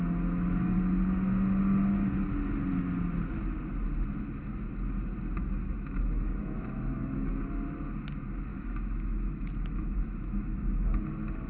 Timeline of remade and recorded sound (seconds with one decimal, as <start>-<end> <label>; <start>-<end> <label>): 0.0-5.6 recorded; 5.6-7.3 remade; 7.3-8.5 recorded; 8.5-11.0 remade; 11.0-11.5 recorded